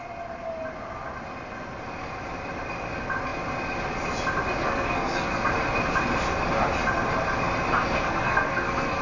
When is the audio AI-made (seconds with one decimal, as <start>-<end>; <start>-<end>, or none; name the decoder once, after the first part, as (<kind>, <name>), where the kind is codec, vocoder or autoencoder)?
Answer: 4.6-5.5 (codec, SNAC); 8.1-9.0